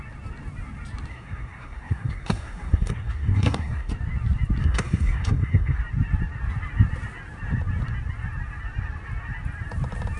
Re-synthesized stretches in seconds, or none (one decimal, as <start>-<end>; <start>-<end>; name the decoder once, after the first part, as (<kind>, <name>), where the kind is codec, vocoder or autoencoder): 1.1-3.9 (codec, SNAC); 4.6-5.8